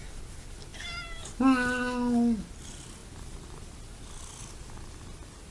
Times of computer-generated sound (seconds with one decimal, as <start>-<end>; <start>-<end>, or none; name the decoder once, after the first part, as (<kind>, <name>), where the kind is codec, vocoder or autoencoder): none